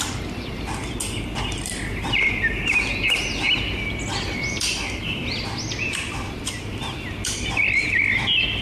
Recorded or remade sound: recorded